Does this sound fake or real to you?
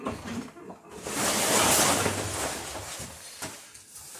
real